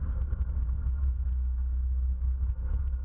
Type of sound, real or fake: fake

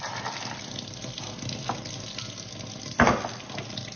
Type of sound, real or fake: real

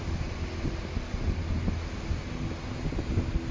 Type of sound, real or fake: real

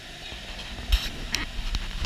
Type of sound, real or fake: real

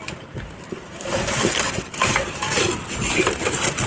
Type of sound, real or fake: real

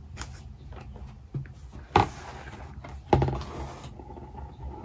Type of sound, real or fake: real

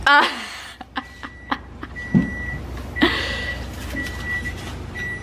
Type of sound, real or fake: real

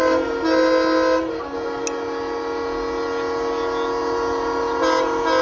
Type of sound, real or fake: real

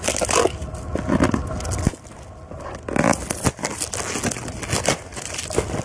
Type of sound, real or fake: real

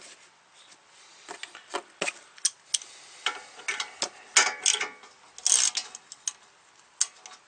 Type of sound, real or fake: real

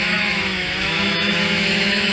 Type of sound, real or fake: fake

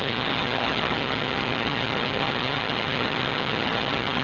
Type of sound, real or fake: fake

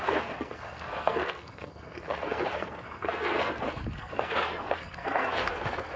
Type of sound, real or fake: fake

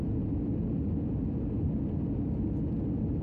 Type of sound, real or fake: real